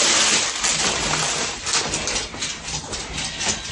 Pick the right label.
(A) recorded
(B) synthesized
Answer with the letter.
A